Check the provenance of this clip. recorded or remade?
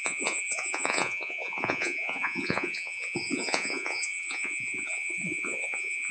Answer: remade